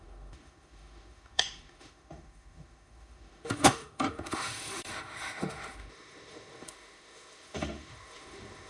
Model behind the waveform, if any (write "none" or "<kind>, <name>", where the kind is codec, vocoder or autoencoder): autoencoder, DAC-VAE